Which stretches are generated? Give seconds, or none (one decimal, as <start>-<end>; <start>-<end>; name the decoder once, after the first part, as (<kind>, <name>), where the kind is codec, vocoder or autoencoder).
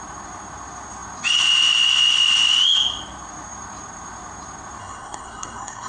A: 4.8-5.9 (codec, SNAC)